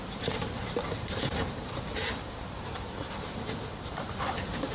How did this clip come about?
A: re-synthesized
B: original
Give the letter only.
A